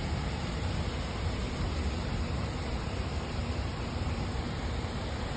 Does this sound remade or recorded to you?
remade